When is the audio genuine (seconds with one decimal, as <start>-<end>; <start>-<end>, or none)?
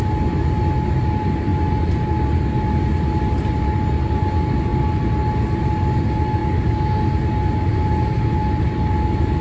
0.0-9.4